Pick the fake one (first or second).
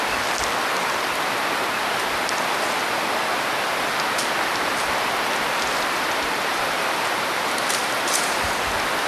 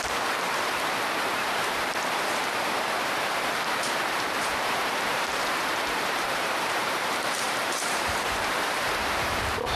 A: second